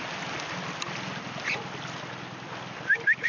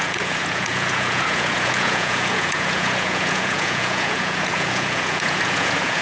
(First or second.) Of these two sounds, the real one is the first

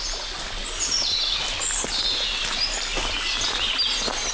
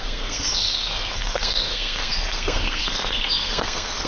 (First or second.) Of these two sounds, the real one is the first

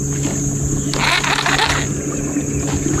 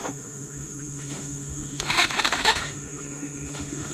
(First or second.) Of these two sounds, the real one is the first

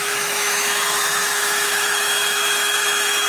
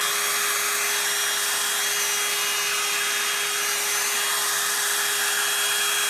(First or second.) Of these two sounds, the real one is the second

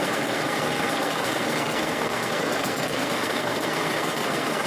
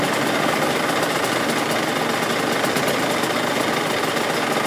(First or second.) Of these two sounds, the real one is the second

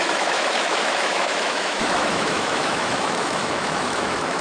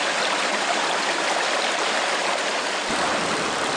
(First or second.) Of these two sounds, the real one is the second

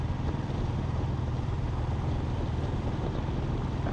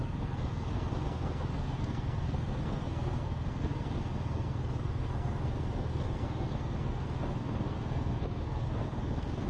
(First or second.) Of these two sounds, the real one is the first